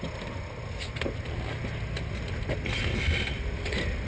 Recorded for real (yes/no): yes